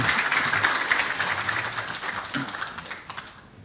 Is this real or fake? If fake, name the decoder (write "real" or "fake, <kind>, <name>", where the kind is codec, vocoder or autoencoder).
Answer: real